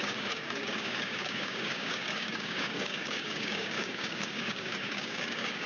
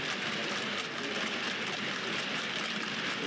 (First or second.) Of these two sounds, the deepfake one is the first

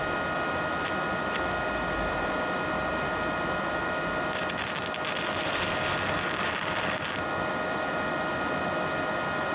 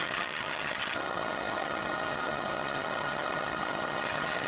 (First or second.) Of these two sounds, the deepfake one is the second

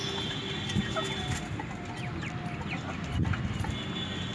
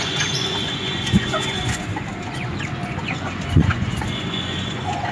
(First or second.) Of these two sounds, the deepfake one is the second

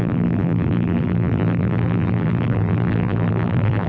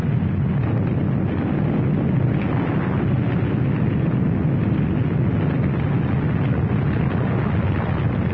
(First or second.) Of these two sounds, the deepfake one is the first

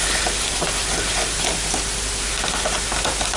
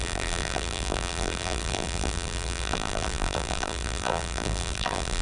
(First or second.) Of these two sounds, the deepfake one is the second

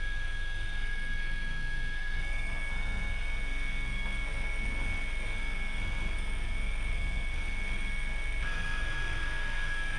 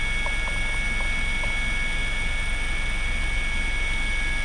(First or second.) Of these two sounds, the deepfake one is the first